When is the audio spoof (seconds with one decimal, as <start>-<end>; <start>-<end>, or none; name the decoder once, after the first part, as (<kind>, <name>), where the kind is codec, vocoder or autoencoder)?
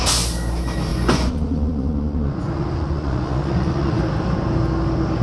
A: 0.9-4.0 (vocoder, Vocos)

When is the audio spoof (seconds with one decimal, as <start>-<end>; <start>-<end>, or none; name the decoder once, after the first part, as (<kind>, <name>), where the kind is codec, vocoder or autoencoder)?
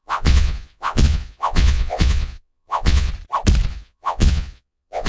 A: 0.0-3.1 (vocoder, Vocos); 3.7-5.1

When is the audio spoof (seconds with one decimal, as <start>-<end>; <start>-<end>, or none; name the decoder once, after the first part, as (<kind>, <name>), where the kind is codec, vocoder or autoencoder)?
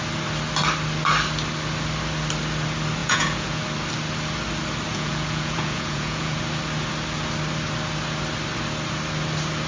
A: 3.0-3.6 (vocoder, Vocos); 4.9-6.4